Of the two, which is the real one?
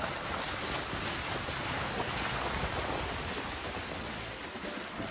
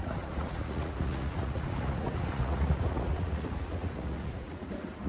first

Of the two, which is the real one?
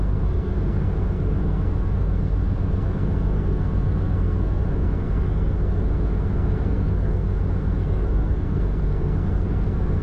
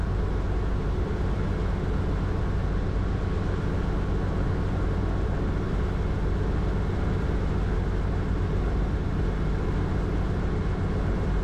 second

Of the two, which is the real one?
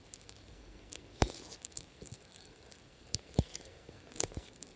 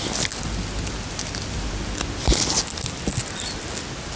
second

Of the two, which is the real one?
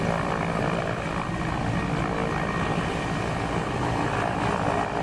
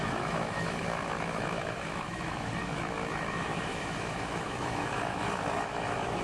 first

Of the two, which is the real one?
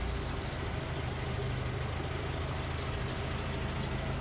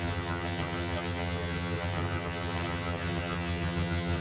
first